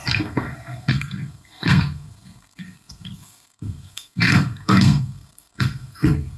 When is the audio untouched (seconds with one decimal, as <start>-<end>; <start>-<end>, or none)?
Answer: none